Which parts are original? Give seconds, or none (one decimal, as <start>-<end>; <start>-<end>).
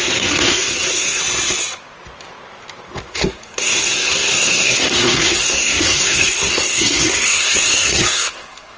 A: 1.2-3.1